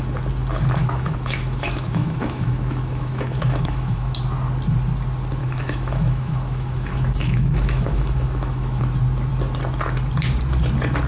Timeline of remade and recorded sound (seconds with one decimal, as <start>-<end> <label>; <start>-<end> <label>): 0.0-0.8 recorded; 0.8-4.2 remade; 4.2-5.4 recorded; 5.4-8.8 remade; 8.8-11.1 recorded